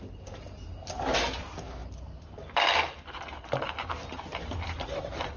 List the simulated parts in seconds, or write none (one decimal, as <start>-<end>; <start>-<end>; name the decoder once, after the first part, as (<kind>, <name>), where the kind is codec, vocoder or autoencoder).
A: none